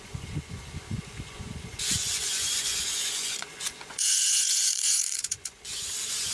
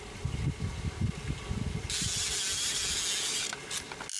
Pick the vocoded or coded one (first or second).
first